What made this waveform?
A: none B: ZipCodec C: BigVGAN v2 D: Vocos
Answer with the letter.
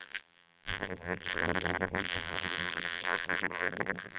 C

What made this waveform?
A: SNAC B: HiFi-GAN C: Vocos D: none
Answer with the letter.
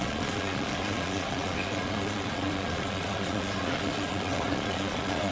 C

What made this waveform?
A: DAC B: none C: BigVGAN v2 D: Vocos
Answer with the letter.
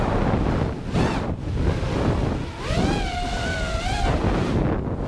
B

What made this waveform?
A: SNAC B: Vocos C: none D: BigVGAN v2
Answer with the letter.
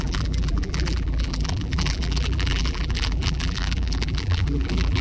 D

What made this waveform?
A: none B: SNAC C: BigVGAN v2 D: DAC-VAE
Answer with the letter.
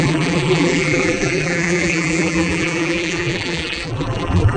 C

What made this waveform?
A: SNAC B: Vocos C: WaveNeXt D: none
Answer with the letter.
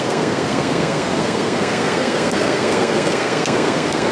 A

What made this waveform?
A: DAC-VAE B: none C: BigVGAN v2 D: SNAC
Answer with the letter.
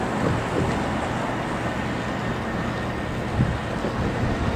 B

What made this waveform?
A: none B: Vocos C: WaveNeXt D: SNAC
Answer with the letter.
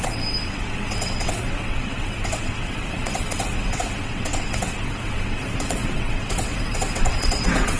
C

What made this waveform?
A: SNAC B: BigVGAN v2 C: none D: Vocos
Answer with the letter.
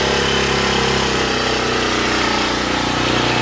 C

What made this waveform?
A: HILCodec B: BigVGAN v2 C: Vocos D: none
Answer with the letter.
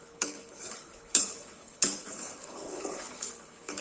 A